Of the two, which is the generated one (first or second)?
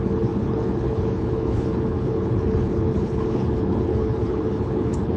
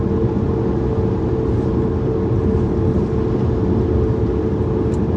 first